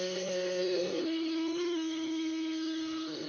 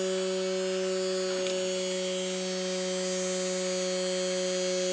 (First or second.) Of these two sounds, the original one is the second